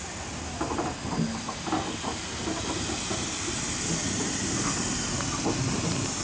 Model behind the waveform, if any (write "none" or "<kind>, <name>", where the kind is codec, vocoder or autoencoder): none